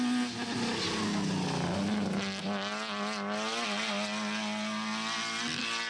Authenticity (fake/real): real